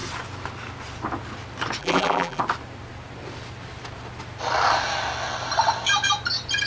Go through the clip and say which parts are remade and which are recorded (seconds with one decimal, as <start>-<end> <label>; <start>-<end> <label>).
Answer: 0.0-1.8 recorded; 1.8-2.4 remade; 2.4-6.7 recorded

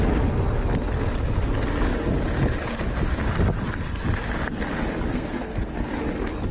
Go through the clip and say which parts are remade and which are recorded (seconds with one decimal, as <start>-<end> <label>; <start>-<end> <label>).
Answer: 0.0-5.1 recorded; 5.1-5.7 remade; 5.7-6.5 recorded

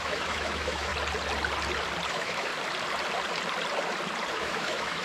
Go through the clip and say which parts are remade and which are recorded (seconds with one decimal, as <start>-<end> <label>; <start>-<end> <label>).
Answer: 0.0-0.9 remade; 0.9-2.1 recorded; 2.1-2.5 remade; 2.5-4.3 recorded; 4.3-5.0 remade